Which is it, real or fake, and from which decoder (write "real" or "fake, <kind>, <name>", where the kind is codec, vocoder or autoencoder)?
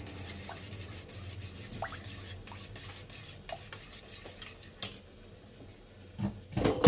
real